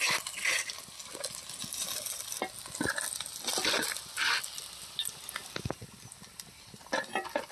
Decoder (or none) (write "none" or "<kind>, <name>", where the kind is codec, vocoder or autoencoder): none